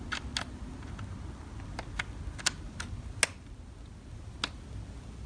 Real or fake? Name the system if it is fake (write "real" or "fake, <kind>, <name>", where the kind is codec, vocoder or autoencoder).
real